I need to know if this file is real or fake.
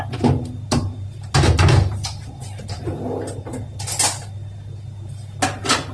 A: real